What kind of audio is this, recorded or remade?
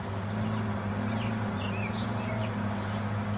recorded